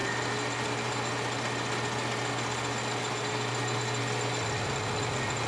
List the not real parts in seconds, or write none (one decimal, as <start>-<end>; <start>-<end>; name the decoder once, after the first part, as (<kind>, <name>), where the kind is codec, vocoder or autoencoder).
none